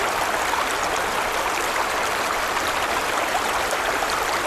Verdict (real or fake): real